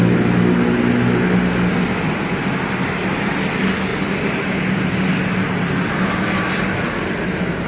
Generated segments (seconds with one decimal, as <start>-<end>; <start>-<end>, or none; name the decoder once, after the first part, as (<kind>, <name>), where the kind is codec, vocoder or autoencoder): none